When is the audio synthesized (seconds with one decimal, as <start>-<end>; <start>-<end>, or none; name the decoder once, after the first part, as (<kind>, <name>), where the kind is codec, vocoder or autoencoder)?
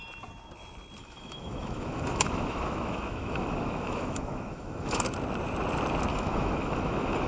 1.0-5.0 (autoencoder, DAC-VAE); 6.1-7.3